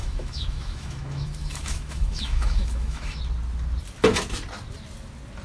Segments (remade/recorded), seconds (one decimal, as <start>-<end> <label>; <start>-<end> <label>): 0.0-3.2 remade; 3.2-5.4 recorded